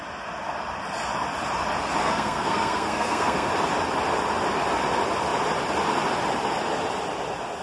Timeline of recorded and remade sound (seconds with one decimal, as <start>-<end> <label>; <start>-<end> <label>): 0.0-2.0 recorded; 2.0-3.5 remade; 3.5-7.6 recorded